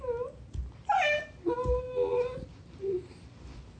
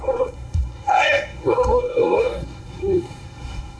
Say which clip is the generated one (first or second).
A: second